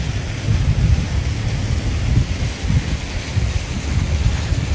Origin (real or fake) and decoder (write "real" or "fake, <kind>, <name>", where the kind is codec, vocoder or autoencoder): real